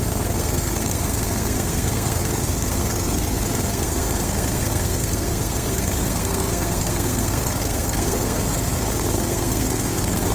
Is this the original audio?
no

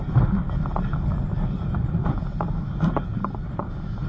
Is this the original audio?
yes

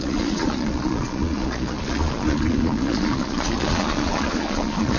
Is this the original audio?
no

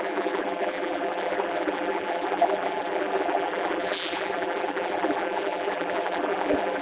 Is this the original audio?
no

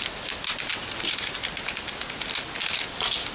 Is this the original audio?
yes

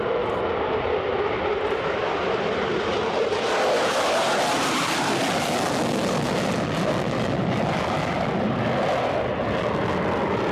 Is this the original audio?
yes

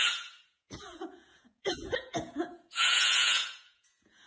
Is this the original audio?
no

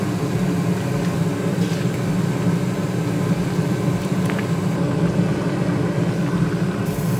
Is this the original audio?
yes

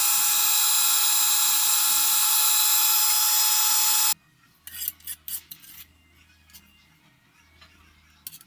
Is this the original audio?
yes